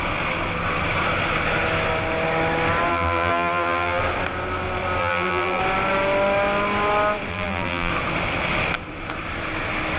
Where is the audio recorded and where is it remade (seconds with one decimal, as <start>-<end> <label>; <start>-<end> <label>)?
0.0-2.9 recorded; 2.9-4.0 remade; 4.0-5.0 recorded; 5.0-5.6 remade; 5.6-7.3 recorded; 7.3-7.9 remade; 7.9-10.0 recorded